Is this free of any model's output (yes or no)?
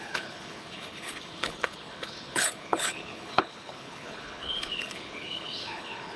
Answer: no